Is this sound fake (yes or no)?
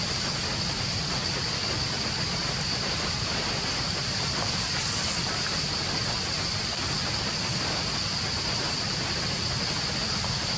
no